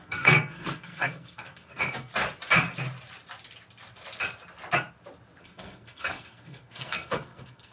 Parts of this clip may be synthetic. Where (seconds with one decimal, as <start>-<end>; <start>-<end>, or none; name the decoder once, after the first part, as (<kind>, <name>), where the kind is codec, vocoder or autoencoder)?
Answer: 0.0-2.1 (codec, SNAC); 5.4-7.7